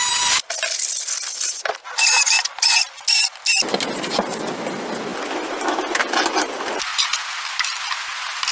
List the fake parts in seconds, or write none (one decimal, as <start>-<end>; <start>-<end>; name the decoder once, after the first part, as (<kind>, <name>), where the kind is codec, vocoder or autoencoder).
none